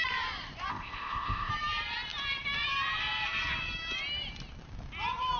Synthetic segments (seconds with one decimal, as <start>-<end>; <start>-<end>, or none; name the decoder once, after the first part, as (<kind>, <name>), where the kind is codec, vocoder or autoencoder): 0.7-1.5 (codec, ZipCodec)